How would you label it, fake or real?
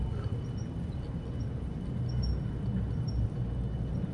real